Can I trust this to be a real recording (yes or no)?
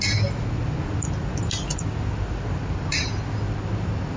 yes